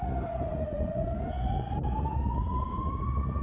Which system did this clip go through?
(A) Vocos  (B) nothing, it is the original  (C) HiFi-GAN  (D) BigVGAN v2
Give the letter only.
A